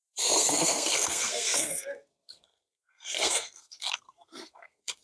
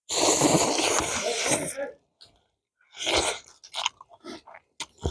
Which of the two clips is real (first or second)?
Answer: second